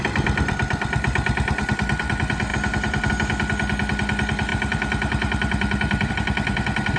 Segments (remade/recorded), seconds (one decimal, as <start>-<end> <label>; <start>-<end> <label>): 0.0-2.5 recorded; 2.5-3.1 remade; 3.1-4.5 recorded; 4.5-6.1 remade; 6.1-7.0 recorded

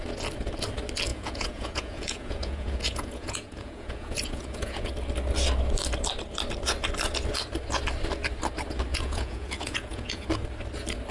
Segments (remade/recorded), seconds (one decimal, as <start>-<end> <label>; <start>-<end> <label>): 0.0-1.1 recorded; 1.1-4.9 remade; 4.9-8.9 recorded; 8.9-10.2 remade; 10.2-11.1 recorded

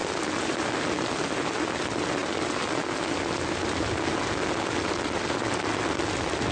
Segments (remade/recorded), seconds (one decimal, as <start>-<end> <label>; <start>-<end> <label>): 0.0-6.5 recorded